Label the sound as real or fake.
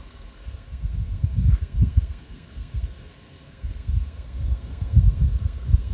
fake